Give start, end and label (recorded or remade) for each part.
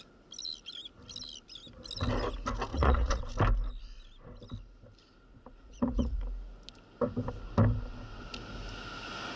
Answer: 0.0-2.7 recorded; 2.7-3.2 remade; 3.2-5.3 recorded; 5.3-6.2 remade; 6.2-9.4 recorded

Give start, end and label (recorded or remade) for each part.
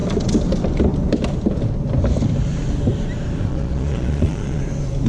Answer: 0.0-3.5 recorded; 3.5-4.6 remade; 4.6-5.1 recorded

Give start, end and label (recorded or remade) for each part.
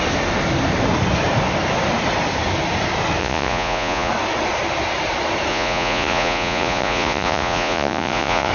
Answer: 0.0-3.2 recorded; 3.2-4.1 remade; 4.1-5.5 recorded; 5.5-8.5 remade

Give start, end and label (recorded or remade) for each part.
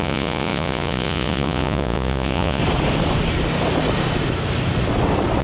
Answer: 0.0-2.6 remade; 2.6-5.4 recorded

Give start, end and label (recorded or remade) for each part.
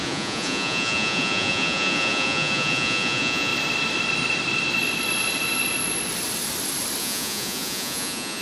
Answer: 0.0-3.5 remade; 3.5-7.0 recorded; 7.0-8.4 remade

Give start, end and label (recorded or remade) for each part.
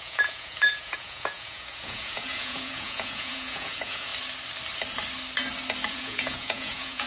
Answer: 0.0-4.1 remade; 4.1-5.9 recorded; 5.9-7.1 remade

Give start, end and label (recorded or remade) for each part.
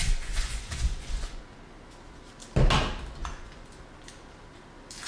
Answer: 0.0-1.4 remade; 1.4-3.2 recorded; 3.2-3.8 remade; 3.8-5.1 recorded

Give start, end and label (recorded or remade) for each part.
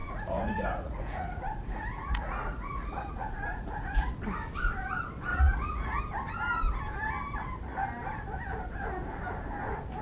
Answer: 0.0-4.1 remade; 4.1-5.3 recorded; 5.3-6.0 remade; 6.0-10.0 recorded